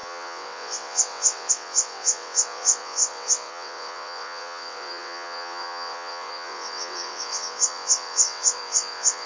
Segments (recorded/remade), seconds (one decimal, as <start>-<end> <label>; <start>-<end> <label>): 0.0-9.3 remade